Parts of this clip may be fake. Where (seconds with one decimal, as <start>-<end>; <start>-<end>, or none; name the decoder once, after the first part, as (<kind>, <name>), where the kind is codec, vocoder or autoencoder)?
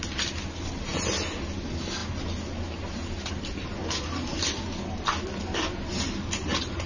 none